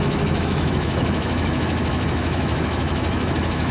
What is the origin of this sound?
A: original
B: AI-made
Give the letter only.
B